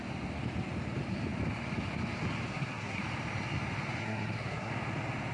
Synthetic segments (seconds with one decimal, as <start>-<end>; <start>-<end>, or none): 2.5-3.0; 4.0-4.7